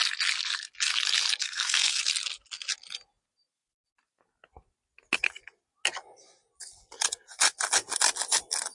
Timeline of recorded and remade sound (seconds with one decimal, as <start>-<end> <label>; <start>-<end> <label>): 0.0-1.4 recorded; 1.4-2.0 remade; 2.0-8.7 recorded